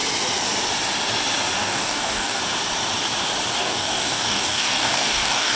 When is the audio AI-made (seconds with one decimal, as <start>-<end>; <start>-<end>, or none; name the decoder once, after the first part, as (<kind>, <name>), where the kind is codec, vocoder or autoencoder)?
1.6-2.4 (codec, DAC); 3.6-5.6